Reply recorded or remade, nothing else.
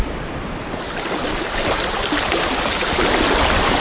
recorded